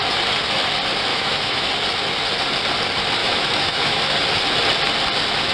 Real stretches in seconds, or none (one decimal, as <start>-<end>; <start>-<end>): 0.0-1.1; 1.7-3.2; 4.0-5.5